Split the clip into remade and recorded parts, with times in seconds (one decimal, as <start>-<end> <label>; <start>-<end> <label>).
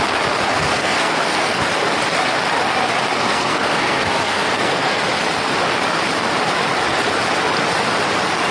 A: 0.0-0.5 recorded; 0.5-1.7 remade; 1.7-3.2 recorded; 3.2-5.0 remade; 5.0-8.5 recorded